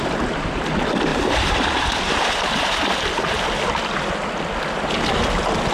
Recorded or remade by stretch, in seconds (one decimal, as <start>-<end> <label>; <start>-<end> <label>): 0.0-1.1 recorded; 1.1-3.3 remade; 3.3-5.7 recorded